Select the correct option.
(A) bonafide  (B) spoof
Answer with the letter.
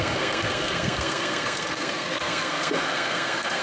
B